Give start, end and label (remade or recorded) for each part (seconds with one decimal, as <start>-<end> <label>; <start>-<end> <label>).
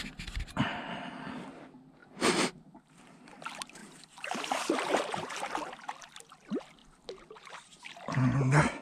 0.0-2.0 recorded; 2.0-2.9 remade; 2.9-3.8 recorded; 3.8-5.5 remade; 5.5-8.8 recorded